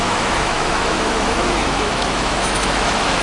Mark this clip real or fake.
fake